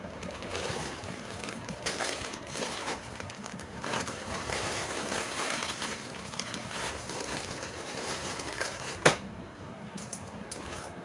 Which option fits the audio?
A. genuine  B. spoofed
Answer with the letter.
B